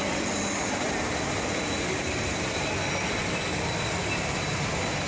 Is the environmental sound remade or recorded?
recorded